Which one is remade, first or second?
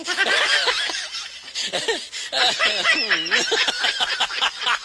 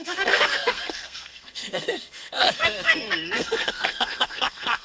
second